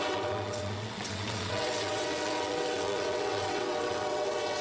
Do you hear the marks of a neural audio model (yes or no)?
yes